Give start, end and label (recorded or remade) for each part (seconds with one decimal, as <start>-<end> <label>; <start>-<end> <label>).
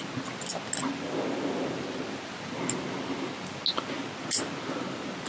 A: 0.0-5.3 recorded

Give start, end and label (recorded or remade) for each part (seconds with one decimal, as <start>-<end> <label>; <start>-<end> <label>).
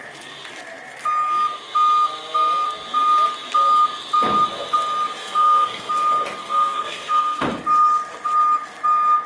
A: 0.0-5.2 recorded; 5.2-5.9 remade; 5.9-6.4 recorded; 6.4-7.4 remade; 7.4-9.3 recorded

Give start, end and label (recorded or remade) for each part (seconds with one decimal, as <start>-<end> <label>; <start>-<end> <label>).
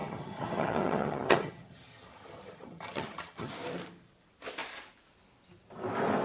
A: 0.0-3.5 remade; 3.5-6.2 recorded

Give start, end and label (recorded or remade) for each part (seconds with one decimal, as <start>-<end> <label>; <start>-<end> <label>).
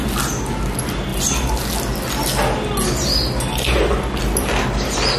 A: 0.0-5.2 recorded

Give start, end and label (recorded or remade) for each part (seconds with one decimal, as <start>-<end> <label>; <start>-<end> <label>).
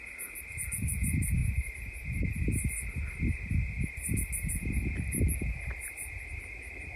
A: 0.0-7.0 recorded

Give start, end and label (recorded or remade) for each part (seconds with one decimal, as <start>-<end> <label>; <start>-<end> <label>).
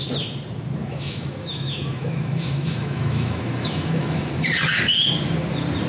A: 0.0-0.8 recorded; 0.8-4.3 remade; 4.3-5.9 recorded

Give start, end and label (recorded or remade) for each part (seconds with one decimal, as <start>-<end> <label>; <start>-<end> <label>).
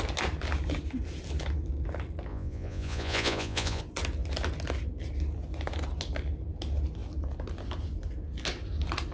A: 0.0-2.3 recorded; 2.3-3.8 remade; 3.8-9.1 recorded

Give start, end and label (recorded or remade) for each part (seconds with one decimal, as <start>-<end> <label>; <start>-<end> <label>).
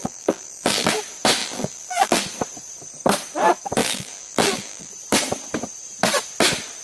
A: 0.0-0.9 remade; 0.9-1.4 recorded; 1.4-2.2 remade; 2.2-3.8 recorded; 3.8-4.9 remade; 4.9-6.8 recorded